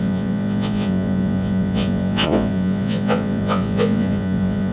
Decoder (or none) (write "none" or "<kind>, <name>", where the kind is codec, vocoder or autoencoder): vocoder, Vocos